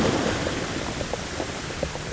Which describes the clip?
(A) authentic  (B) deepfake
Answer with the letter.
B